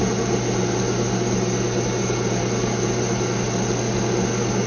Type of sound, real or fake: real